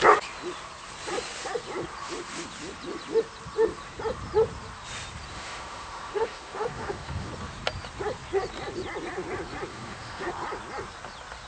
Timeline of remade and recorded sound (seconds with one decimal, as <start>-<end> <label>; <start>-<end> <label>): 0.0-5.3 recorded; 5.3-7.3 remade; 7.3-9.7 recorded; 9.7-10.3 remade; 10.3-11.5 recorded